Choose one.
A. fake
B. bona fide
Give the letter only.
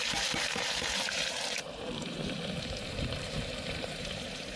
A